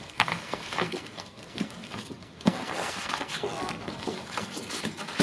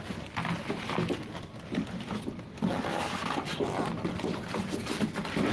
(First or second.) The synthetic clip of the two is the first